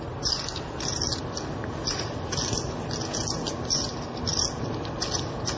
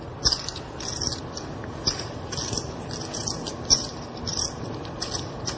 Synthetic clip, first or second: second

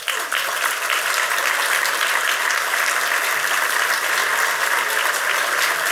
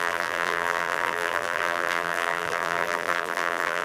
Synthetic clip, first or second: second